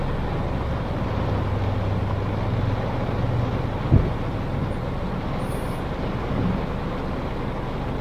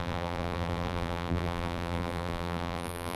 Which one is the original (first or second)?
first